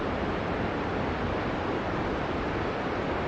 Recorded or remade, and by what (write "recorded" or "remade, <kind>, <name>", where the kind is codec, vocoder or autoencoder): remade, vocoder, BigVGAN v2